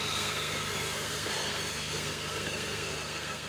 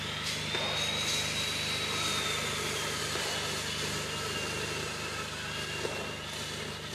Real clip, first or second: second